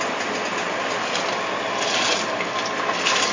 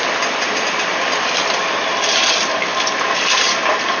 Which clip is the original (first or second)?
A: first